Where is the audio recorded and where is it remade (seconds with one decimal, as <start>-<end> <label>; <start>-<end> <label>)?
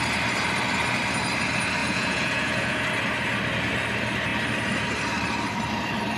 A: 0.0-1.8 recorded; 1.8-2.8 remade; 2.8-6.2 recorded